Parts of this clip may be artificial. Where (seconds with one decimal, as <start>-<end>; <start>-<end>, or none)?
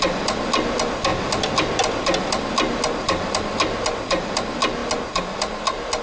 none